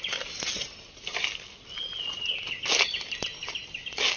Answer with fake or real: real